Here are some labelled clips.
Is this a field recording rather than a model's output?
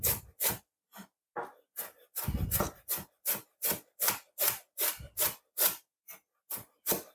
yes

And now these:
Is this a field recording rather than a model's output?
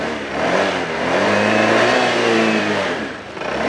no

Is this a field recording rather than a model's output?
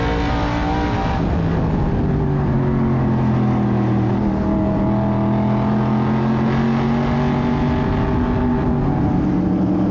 yes